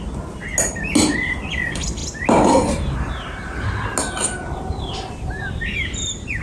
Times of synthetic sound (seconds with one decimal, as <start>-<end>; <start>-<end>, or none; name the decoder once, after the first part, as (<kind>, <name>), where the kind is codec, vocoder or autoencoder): none